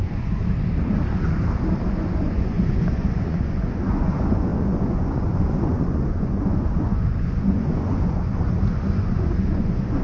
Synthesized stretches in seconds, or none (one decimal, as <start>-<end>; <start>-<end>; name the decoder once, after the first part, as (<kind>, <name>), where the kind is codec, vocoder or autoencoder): 0.0-0.4 (vocoder, Vocos); 1.9-10.0